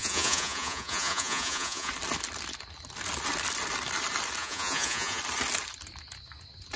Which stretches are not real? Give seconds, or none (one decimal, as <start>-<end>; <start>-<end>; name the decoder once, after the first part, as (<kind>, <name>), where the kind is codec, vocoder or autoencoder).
0.0-1.9 (vocoder, Vocos); 4.4-5.2